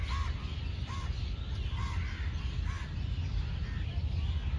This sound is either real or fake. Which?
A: real